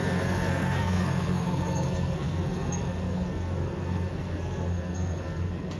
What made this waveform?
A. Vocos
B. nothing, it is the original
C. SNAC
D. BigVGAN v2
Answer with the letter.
C